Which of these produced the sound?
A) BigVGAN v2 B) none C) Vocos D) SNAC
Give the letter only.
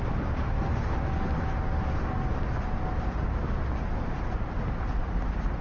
B